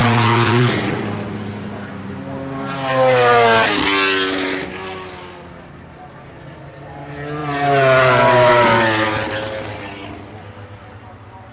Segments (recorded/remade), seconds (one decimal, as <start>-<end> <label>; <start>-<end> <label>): 0.0-1.0 remade; 1.0-11.5 recorded